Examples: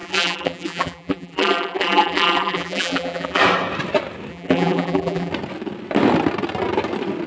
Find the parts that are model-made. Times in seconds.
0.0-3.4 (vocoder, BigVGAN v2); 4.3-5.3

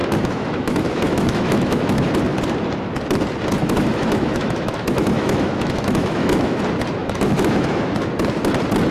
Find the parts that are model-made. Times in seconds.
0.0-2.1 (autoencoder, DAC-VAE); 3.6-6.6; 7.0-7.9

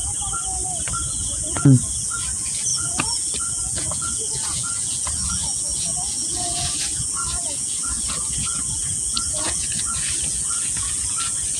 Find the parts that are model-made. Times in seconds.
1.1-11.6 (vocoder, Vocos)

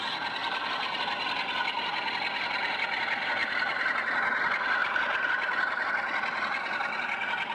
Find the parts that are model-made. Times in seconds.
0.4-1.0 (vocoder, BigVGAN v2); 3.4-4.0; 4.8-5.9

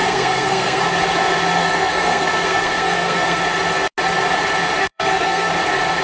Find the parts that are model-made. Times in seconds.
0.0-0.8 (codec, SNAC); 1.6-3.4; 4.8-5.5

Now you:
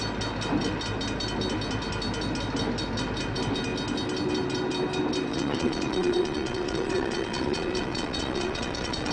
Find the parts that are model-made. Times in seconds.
5.3-9.1 (vocoder, Vocos)

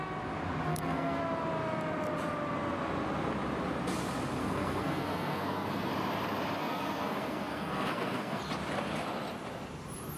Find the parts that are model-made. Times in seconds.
0.7-1.2 (codec, SNAC); 4.4-5.9; 6.6-8.4